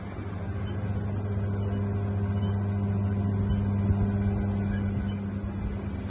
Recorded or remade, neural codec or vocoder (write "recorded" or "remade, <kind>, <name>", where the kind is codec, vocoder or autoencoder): recorded